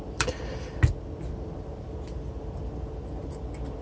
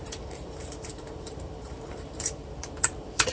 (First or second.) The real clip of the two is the first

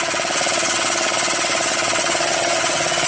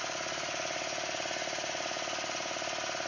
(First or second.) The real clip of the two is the second